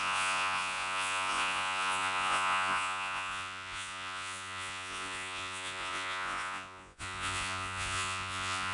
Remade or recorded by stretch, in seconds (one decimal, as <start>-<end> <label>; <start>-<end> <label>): 0.0-8.7 remade